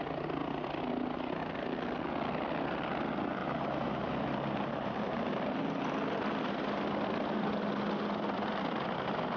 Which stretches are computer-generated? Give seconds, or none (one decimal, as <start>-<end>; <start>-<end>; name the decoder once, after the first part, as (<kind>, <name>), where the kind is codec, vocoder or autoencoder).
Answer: 3.4-5.5 (vocoder, BigVGAN v2)